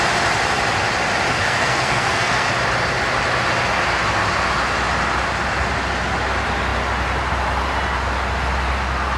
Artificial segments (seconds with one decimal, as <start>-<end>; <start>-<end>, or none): 1.3-2.5